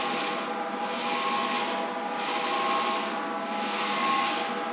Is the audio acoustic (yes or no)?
yes